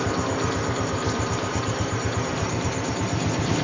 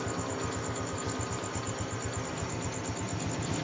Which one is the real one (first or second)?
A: second